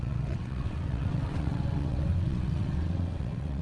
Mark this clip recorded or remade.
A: remade